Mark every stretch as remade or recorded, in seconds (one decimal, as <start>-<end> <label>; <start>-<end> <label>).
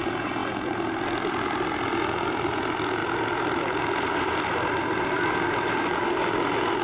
0.0-6.8 recorded